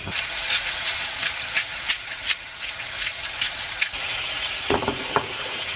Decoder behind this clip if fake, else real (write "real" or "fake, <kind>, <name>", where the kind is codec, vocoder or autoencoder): fake, vocoder, Vocos